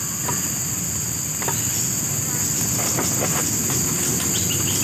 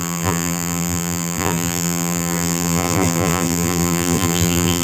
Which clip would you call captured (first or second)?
first